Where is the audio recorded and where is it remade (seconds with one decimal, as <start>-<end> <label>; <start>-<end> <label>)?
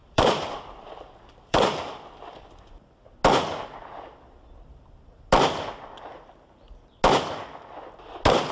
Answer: 0.0-2.7 remade; 2.7-8.5 recorded